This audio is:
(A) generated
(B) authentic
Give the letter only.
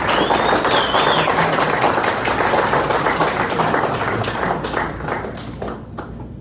B